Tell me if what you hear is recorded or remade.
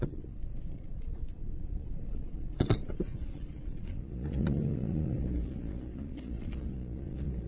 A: remade